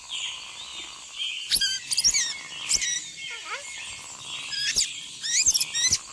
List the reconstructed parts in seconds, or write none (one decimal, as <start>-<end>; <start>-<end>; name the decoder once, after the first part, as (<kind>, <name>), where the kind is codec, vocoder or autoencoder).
none